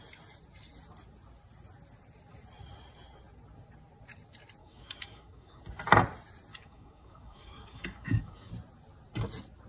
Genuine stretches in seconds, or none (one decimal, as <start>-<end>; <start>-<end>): 0.0-4.6; 5.6-6.5; 8.5-9.7